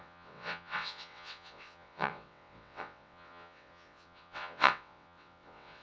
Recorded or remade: remade